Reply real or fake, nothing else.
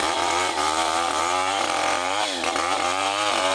fake